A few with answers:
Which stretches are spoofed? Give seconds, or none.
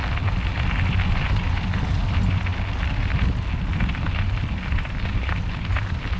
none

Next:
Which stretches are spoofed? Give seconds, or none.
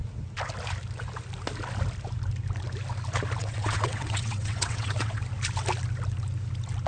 3.4-5.2 (vocoder, WaveNeXt)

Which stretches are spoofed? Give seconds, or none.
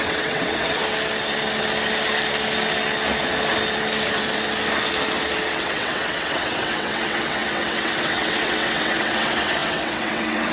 0.0-0.8 (vocoder, WaveNeXt); 5.5-10.5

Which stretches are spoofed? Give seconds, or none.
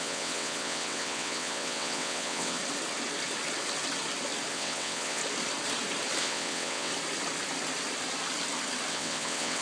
0.0-2.6 (vocoder, WaveNeXt); 4.5-5.2; 6.2-6.9; 8.9-9.6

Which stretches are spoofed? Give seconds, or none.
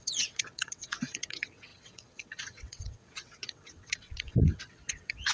0.0-5.3 (vocoder, WaveNeXt)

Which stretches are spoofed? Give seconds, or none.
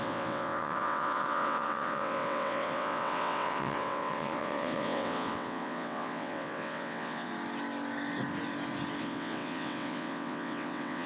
0.0-7.3 (vocoder, WaveNeXt); 9.0-11.1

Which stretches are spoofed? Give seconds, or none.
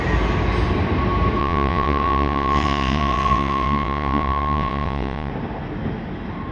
1.4-5.3 (vocoder, WaveNeXt)